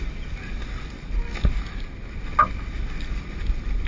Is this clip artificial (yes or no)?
no